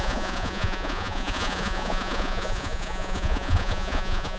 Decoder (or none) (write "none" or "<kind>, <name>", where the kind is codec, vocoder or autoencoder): vocoder, Vocos